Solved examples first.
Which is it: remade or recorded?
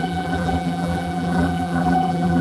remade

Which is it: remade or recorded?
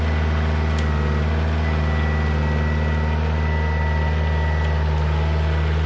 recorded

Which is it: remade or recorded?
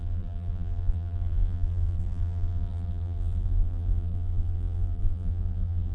remade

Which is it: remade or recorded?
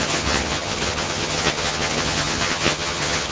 remade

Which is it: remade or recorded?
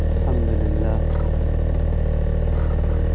recorded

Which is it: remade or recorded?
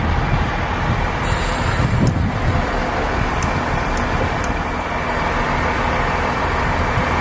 recorded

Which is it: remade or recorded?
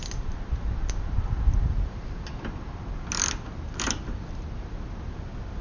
recorded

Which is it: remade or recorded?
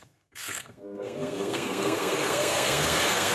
remade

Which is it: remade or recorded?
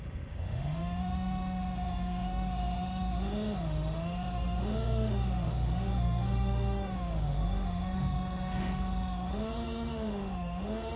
remade